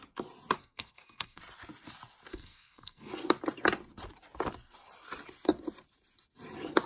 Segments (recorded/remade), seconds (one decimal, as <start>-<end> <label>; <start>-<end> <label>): 0.0-0.6 recorded; 0.6-1.4 remade; 1.4-2.3 recorded; 2.3-3.1 remade; 3.1-6.9 recorded